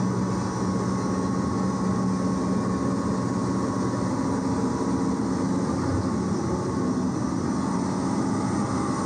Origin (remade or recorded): recorded